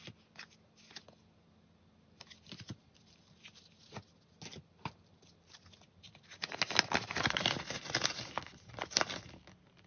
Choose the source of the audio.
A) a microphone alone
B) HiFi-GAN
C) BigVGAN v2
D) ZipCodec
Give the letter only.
A